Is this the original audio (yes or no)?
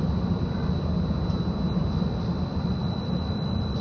yes